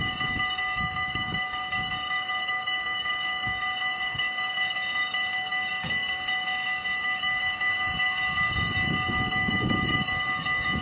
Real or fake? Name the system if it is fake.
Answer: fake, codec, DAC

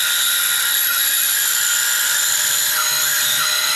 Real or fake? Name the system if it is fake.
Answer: real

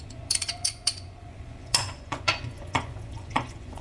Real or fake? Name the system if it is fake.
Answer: fake, vocoder, Vocos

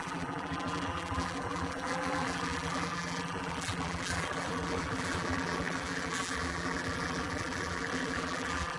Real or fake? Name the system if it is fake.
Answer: fake, vocoder, BigVGAN v2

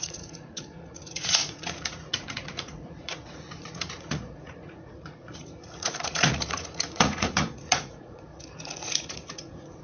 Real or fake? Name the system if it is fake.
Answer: fake, vocoder, Vocos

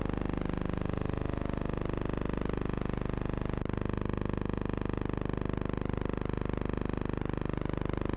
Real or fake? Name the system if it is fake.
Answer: real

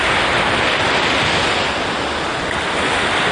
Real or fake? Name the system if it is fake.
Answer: real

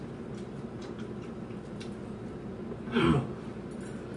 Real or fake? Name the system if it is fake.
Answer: real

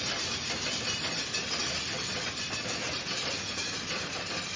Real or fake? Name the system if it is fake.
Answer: real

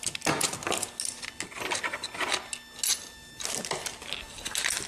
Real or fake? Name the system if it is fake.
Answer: real